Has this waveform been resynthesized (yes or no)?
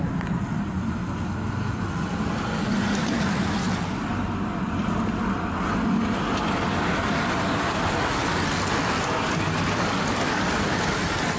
no